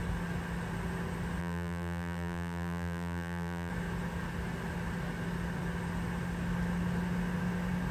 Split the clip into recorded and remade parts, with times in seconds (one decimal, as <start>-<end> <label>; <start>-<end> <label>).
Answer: 0.0-1.4 recorded; 1.4-3.7 remade; 3.7-7.9 recorded